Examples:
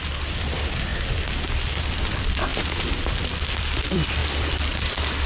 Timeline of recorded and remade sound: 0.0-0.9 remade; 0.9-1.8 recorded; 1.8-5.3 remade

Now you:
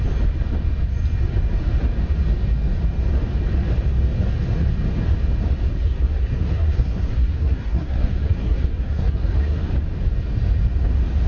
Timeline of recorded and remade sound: 0.0-5.7 recorded; 5.7-9.7 remade; 9.7-11.3 recorded